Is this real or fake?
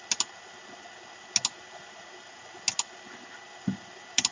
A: real